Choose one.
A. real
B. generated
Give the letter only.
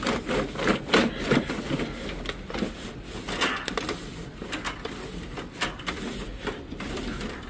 A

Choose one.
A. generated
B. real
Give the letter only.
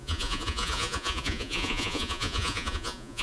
A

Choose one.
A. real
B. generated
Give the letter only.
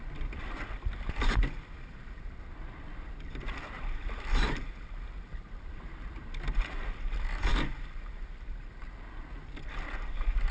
A